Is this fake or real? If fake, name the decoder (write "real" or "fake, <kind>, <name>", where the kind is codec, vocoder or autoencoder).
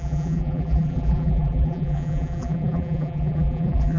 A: fake, vocoder, BigVGAN v2